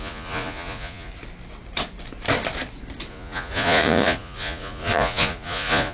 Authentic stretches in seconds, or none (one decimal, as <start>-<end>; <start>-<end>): 1.1-3.1